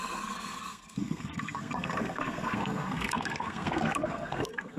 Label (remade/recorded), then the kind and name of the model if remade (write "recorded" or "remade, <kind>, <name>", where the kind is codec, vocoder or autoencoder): remade, codec, SNAC